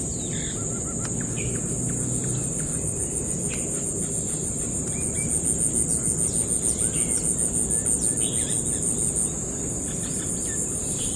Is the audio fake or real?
real